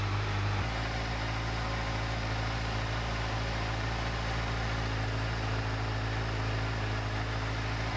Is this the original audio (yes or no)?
yes